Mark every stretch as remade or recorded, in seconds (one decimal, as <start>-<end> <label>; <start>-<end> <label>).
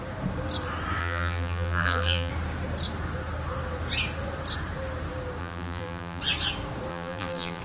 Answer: 0.0-1.0 recorded; 1.0-2.3 remade; 2.3-5.4 recorded; 5.4-6.2 remade; 6.2-6.9 recorded; 6.9-7.6 remade